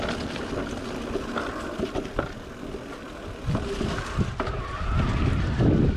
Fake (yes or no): no